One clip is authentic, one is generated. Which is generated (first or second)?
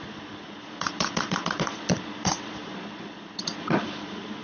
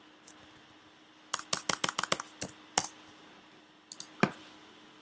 first